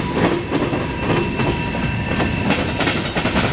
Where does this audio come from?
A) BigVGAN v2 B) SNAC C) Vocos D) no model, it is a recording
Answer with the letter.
D